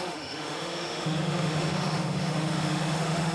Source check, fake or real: fake